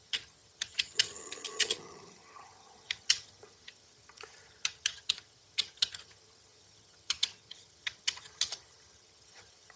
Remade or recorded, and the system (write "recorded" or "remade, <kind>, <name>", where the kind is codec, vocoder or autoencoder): remade, vocoder, HiFi-GAN